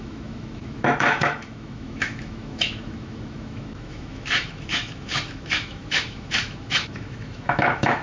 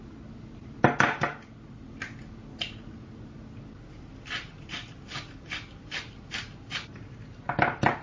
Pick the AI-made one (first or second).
first